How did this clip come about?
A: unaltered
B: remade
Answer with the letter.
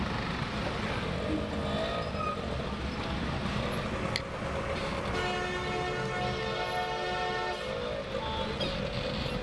A